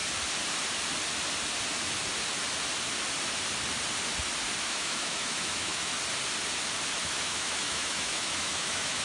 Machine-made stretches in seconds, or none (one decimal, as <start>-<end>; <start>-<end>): 4.6-5.9; 7.0-9.0

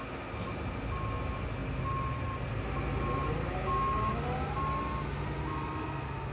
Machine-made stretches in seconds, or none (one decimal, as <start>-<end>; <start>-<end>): none